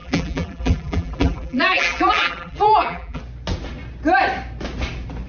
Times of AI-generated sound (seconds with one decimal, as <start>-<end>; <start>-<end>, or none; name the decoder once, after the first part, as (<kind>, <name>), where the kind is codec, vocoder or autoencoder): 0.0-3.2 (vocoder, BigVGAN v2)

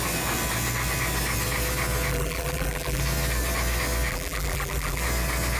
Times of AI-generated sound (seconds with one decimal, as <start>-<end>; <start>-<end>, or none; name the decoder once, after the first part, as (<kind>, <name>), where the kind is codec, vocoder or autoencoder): 2.1-3.0 (vocoder, BigVGAN v2); 4.1-5.0

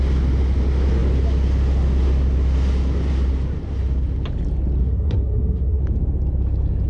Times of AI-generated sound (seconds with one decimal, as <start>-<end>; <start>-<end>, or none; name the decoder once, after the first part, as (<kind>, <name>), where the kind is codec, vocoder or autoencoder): 4.8-5.8 (codec, SNAC)

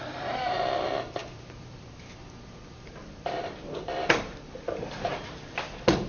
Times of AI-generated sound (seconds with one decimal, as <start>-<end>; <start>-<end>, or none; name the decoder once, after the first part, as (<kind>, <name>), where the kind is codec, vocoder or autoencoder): 0.0-6.1 (vocoder, BigVGAN v2)

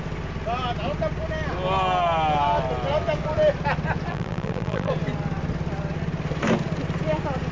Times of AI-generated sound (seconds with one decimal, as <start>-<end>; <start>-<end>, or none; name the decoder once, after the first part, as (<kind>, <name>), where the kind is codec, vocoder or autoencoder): 4.1-4.9 (vocoder, BigVGAN v2)

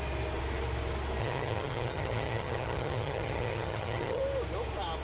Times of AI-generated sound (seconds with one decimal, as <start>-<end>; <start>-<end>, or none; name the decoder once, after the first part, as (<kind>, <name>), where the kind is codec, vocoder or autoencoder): 1.2-4.2 (vocoder, HiFi-GAN)

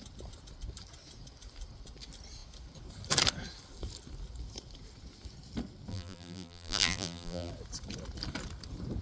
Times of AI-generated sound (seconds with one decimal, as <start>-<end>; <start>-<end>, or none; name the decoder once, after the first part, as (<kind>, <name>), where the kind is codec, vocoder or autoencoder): 5.9-7.5 (vocoder, BigVGAN v2)